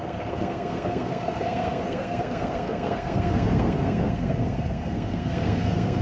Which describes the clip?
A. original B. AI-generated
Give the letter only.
B